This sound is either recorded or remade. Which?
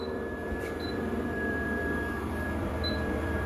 remade